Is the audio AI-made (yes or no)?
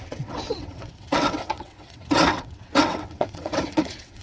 yes